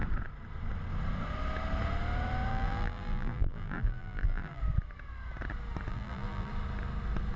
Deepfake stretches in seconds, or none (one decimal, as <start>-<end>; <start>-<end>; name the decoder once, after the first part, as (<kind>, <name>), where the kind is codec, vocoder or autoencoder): 2.5-4.6 (vocoder, BigVGAN v2); 5.9-6.5